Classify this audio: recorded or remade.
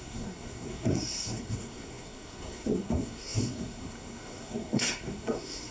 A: remade